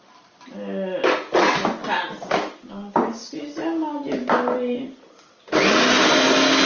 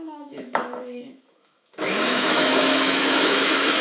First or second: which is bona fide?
first